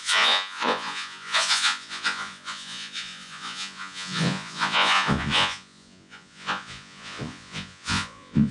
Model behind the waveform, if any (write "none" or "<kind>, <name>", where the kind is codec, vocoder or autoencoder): vocoder, Vocos